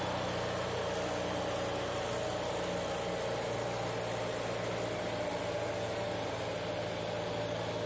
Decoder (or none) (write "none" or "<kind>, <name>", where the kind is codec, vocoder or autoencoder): none